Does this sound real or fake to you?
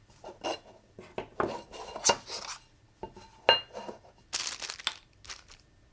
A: real